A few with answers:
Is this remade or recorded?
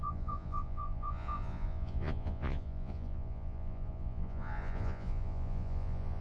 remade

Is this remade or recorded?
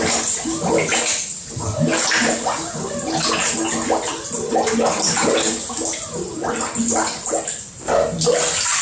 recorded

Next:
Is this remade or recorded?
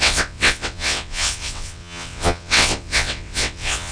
remade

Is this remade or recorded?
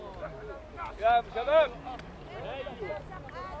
recorded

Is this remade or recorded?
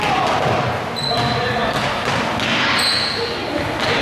recorded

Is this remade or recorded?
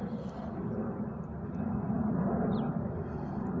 recorded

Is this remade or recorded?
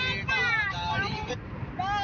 recorded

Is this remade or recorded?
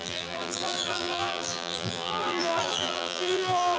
remade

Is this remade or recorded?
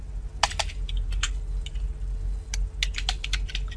recorded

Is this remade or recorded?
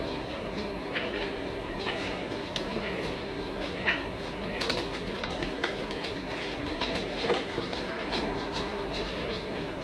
remade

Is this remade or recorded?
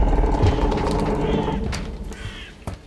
recorded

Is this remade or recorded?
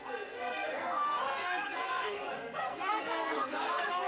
remade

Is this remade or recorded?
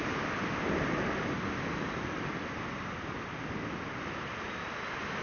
recorded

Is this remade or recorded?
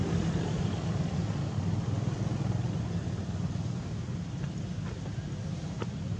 recorded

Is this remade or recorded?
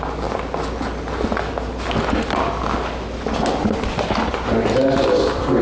recorded